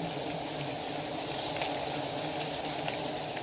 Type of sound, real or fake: real